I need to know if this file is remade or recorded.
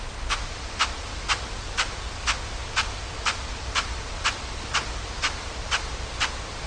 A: recorded